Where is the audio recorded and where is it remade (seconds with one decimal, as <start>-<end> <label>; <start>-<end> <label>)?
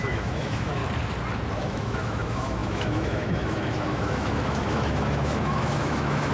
0.0-0.8 remade; 0.8-1.5 recorded; 1.5-6.3 remade